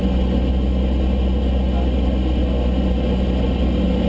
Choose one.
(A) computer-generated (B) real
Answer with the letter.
B